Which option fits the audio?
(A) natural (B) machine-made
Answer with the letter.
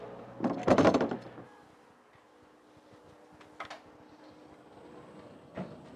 A